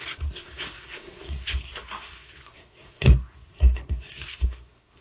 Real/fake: fake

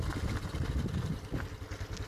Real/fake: real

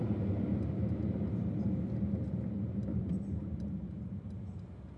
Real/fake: real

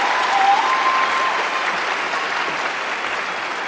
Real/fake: real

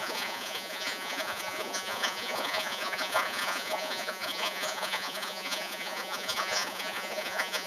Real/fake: fake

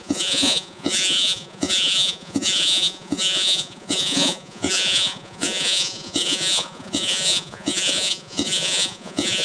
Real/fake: fake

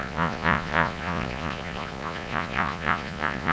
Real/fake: fake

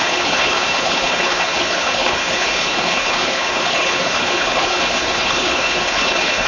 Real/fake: fake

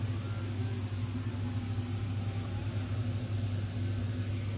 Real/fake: real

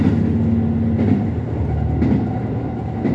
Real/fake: real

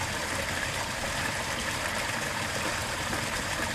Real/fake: fake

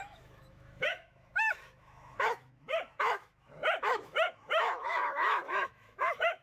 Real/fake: fake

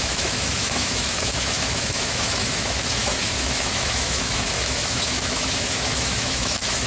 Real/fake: fake